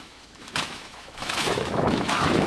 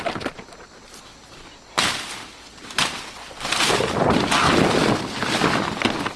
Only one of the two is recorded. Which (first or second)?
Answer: second